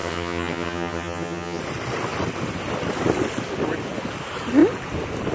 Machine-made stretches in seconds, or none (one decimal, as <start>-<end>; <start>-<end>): 0.0-1.6